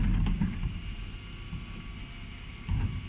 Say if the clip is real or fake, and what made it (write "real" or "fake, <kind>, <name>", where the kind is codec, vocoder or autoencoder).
real